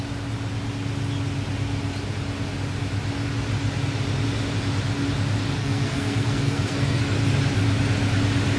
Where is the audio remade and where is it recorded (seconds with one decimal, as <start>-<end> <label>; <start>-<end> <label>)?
0.0-5.6 recorded; 5.6-7.0 remade; 7.0-8.6 recorded

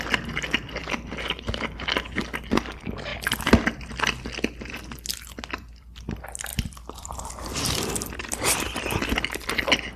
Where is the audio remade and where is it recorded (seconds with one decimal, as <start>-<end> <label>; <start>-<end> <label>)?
0.0-3.1 recorded; 3.1-3.9 remade; 3.9-6.5 recorded; 6.5-7.3 remade; 7.3-10.0 recorded

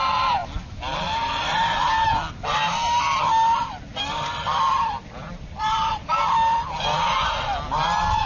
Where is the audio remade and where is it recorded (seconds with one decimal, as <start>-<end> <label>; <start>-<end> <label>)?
0.0-3.9 recorded; 3.9-5.9 remade; 5.9-8.3 recorded

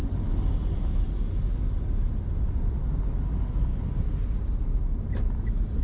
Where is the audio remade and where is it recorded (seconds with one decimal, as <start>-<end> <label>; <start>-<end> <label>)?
0.0-5.8 recorded

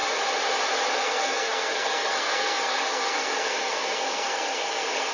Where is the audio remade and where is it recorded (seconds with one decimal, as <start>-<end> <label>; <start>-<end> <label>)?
0.0-0.9 recorded; 0.9-5.1 remade